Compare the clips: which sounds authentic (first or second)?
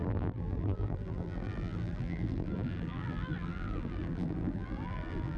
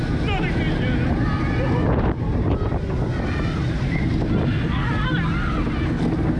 second